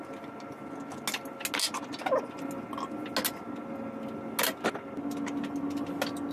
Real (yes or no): yes